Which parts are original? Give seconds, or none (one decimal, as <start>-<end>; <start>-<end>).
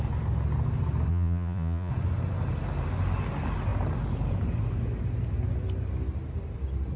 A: 0.0-1.1; 1.9-7.0